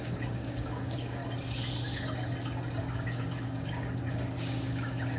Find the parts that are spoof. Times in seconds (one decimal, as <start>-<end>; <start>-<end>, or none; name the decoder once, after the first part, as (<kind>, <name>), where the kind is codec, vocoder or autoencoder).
0.0-1.2 (codec, DAC); 2.8-5.2